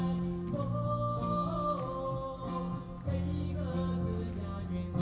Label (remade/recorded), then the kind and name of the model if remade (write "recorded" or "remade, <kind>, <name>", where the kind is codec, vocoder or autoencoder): recorded